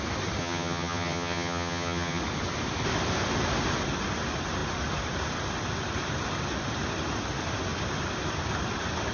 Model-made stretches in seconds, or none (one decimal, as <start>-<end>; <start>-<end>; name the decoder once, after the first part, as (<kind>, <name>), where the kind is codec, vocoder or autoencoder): 0.4-2.2 (vocoder, HiFi-GAN)